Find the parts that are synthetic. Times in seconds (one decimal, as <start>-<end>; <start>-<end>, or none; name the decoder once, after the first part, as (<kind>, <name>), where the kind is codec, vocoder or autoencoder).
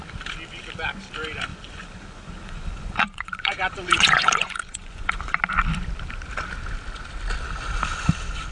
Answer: 1.5-5.4 (vocoder, Vocos)